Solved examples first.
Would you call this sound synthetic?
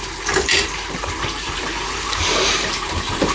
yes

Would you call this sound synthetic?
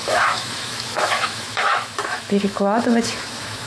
yes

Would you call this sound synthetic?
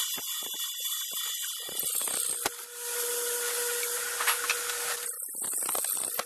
no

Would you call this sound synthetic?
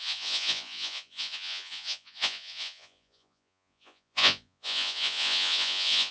yes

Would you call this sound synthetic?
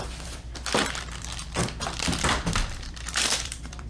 yes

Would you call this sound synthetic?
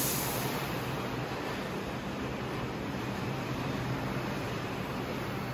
no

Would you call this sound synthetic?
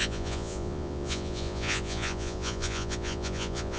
yes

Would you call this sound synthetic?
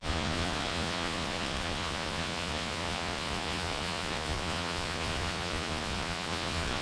yes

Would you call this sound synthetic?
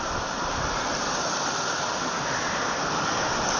no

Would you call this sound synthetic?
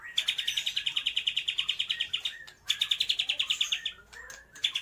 no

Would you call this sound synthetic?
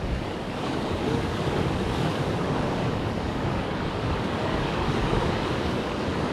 yes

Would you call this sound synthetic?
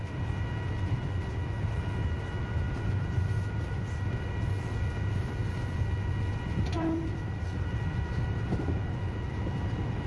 no